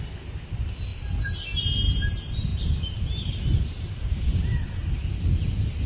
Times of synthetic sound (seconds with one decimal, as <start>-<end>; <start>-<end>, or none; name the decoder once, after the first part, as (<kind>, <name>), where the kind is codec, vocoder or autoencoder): 2.5-5.1 (vocoder, BigVGAN v2)